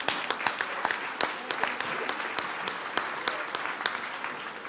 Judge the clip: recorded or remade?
recorded